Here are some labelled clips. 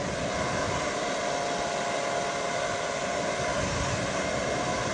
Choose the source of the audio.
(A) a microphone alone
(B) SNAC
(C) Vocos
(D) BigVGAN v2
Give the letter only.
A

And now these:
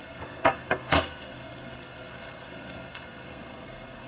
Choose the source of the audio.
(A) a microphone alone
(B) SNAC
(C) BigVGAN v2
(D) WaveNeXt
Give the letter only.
B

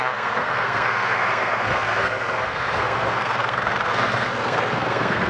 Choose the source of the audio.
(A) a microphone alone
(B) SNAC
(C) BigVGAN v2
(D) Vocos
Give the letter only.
B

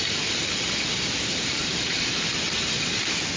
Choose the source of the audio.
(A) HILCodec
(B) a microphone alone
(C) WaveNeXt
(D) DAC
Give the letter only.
B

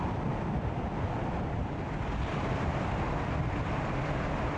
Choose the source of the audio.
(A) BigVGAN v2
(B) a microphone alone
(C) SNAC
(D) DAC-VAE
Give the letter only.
B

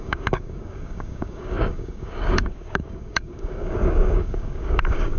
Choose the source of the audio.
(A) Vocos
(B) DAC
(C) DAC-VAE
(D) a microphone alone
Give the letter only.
B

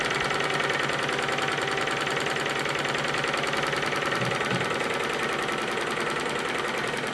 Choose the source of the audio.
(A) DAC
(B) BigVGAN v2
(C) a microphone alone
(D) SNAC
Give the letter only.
C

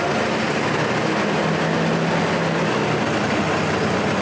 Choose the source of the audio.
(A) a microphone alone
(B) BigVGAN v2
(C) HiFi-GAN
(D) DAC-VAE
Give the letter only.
A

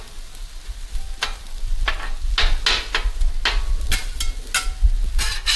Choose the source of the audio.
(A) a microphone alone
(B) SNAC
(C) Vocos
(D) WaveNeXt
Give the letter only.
A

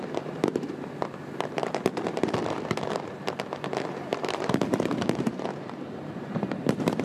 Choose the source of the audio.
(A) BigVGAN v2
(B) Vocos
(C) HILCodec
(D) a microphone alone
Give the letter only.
A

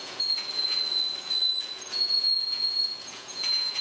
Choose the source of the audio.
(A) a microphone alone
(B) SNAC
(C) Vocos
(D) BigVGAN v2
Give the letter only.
C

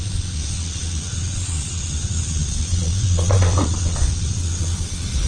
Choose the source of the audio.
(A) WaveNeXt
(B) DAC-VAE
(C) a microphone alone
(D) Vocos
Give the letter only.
D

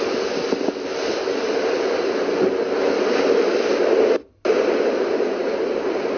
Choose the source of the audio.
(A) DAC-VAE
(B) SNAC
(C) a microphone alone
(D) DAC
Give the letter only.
C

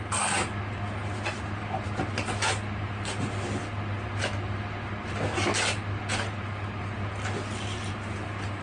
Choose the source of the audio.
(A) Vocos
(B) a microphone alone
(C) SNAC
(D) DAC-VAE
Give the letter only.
B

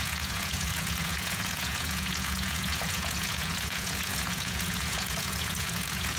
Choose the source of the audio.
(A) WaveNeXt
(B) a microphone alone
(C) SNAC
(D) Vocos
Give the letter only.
D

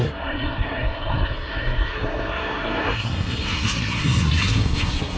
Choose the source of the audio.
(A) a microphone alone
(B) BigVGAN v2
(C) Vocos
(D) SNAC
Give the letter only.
D